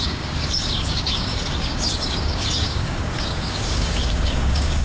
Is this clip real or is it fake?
fake